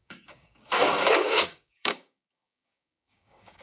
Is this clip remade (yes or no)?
yes